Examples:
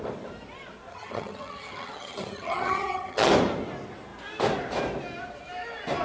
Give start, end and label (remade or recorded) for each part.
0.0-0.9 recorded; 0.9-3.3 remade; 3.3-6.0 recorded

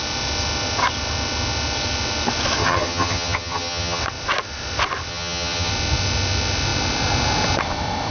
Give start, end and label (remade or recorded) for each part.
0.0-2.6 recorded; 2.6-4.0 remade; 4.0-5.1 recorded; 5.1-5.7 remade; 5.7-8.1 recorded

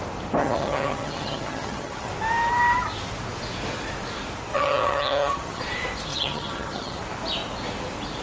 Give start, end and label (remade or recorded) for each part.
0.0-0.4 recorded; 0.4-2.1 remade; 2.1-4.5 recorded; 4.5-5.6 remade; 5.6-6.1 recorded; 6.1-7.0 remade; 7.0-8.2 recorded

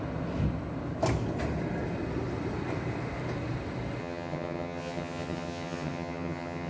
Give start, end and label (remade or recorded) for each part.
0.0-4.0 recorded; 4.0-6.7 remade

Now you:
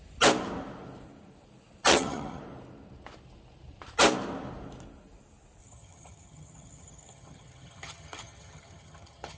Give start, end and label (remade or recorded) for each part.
0.0-1.9 recorded; 1.9-2.4 remade; 2.4-5.6 recorded; 5.6-9.4 remade

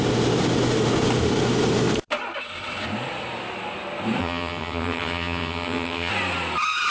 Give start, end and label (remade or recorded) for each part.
0.0-4.2 recorded; 4.2-6.1 remade; 6.1-6.9 recorded